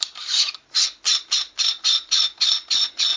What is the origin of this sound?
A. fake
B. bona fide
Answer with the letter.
B